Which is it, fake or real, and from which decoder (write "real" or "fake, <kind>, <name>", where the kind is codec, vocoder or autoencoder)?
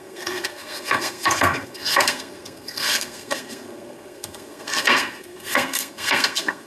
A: fake, codec, SNAC